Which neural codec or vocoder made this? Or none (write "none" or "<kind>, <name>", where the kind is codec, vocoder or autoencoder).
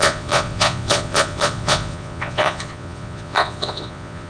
vocoder, Vocos